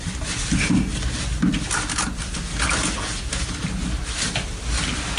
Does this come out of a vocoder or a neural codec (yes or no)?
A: no